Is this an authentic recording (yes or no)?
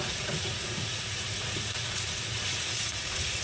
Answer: no